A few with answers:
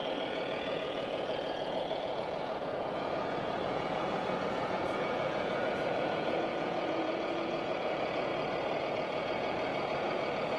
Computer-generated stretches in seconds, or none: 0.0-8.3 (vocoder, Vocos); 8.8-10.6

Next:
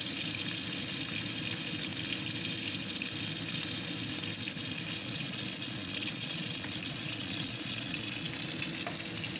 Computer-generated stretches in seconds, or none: 5.0-8.3 (vocoder, Vocos)

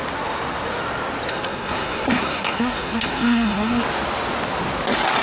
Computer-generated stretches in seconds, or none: 1.3-3.8 (codec, SNAC)

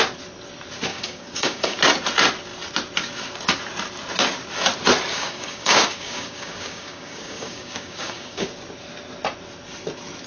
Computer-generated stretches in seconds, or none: 0.9-1.8 (codec, DAC); 5.1-8.5

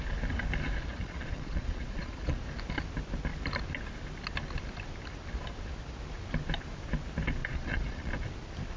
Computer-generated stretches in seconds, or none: 0.9-2.4 (vocoder, Vocos); 7.4-8.1

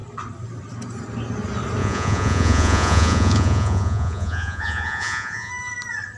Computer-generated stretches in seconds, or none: 1.8-5.5 (vocoder, Vocos)

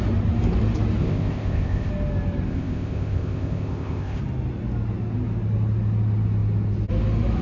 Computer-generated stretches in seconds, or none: 1.0-1.9 (codec, ZipCodec); 2.5-4.2

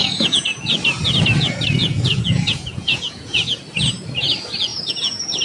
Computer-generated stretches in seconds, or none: 0.0-0.7 (vocoder, Vocos); 1.8-3.6; 4.7-5.4